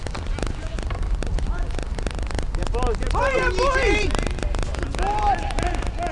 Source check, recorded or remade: recorded